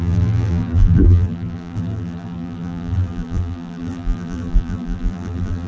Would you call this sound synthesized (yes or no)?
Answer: yes